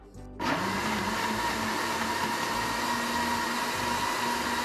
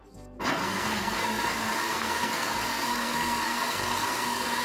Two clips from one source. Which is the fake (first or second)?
second